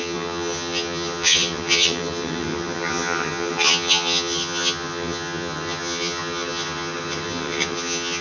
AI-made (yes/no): yes